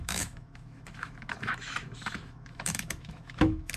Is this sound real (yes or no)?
no